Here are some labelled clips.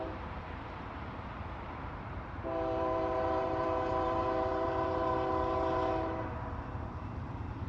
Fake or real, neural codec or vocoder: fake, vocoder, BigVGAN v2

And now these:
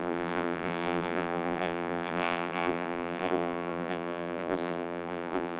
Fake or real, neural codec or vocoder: fake, vocoder, BigVGAN v2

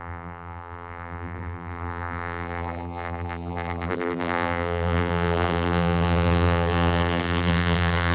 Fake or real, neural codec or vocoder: fake, vocoder, BigVGAN v2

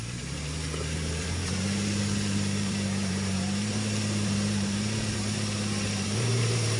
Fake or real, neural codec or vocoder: fake, vocoder, BigVGAN v2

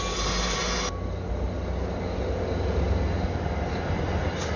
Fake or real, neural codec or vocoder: real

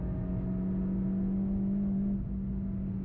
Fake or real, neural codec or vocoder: real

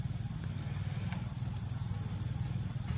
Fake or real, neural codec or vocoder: real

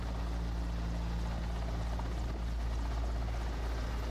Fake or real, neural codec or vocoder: real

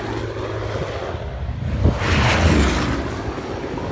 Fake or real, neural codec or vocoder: real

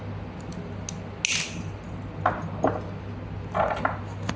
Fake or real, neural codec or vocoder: real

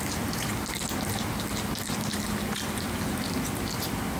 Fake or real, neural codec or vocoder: real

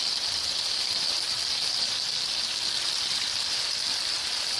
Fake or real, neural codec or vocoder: real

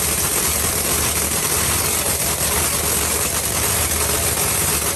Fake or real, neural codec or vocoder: real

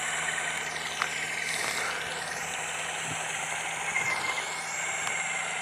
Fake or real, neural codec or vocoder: real